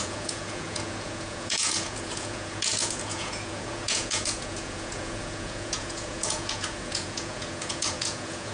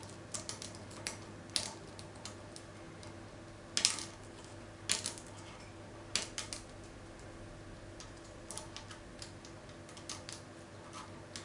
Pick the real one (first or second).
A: second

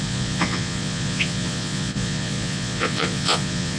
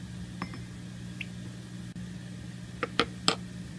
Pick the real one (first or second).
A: second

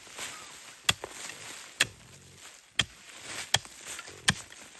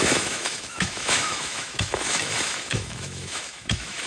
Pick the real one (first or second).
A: first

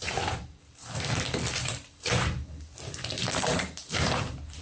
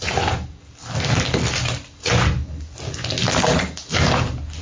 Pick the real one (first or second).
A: second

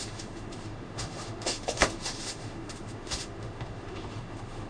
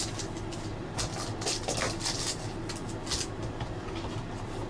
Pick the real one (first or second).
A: second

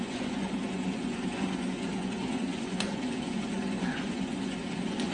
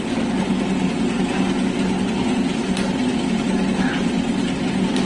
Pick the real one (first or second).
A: second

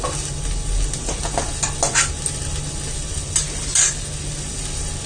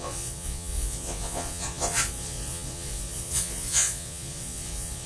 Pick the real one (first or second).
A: first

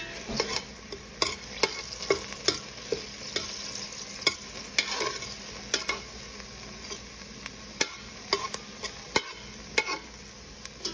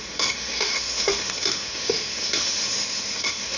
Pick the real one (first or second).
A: first